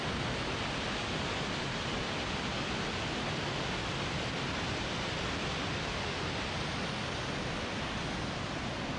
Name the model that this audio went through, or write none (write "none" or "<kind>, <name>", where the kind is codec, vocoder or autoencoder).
none